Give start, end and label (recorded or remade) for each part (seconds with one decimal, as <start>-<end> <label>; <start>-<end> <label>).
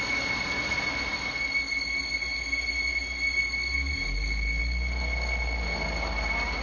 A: 0.0-6.6 recorded